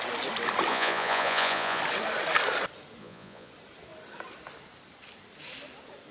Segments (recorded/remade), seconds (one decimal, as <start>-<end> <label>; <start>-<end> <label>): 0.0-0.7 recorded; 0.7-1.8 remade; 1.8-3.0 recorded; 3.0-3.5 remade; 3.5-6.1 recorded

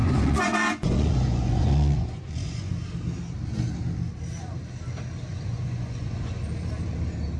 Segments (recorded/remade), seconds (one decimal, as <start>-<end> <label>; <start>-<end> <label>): 0.0-2.8 remade; 2.8-5.3 recorded; 5.3-6.4 remade; 6.4-7.4 recorded

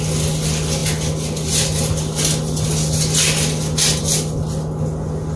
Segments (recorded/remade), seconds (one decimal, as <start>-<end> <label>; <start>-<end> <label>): 0.0-5.4 recorded

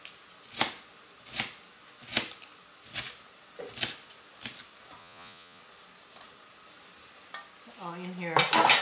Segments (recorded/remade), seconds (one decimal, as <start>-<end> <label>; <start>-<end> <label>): 0.0-5.0 recorded; 5.0-5.6 remade; 5.6-8.8 recorded

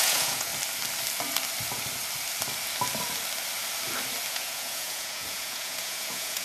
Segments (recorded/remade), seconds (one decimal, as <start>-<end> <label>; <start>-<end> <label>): 0.0-0.5 remade; 0.5-4.3 recorded; 4.3-6.4 remade

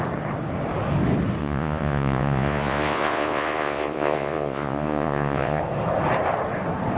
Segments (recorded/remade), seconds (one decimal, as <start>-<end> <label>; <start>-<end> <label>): 0.0-1.4 recorded; 1.4-5.6 remade; 5.6-7.0 recorded